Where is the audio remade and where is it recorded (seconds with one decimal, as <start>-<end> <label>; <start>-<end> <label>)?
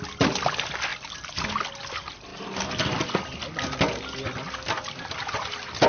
0.0-5.9 recorded